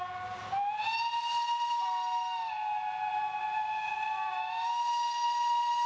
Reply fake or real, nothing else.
real